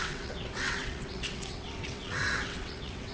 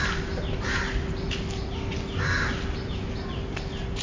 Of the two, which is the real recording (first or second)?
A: second